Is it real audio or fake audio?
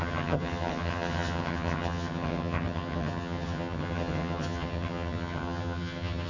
fake